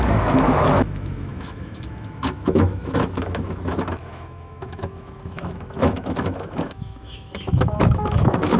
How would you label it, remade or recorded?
remade